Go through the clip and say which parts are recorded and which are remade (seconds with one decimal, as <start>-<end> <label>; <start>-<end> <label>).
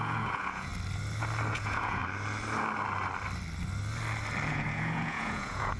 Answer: 0.0-0.7 remade; 0.7-1.5 recorded; 1.5-2.0 remade; 2.0-4.5 recorded; 4.5-5.8 remade